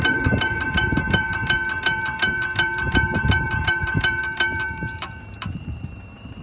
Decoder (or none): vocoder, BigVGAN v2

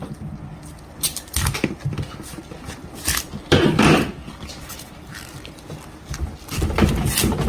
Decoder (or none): none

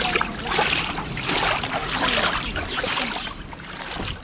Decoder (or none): none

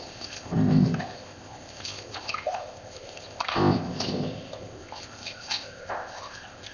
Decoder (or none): codec, ZipCodec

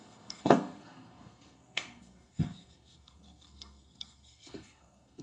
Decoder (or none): codec, SNAC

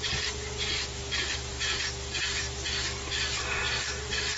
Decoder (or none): none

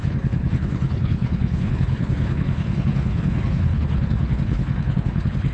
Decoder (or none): codec, HILCodec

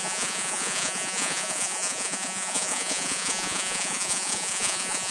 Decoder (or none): vocoder, Vocos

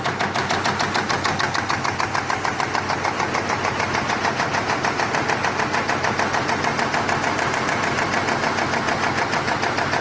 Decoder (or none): none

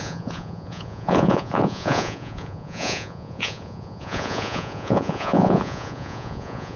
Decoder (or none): vocoder, Vocos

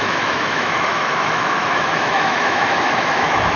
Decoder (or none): autoencoder, DAC-VAE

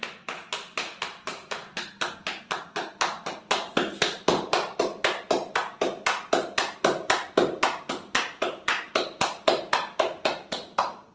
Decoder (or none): none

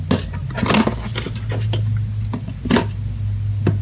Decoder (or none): none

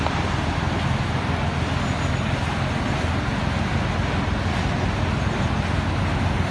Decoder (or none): none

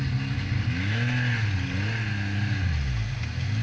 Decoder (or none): none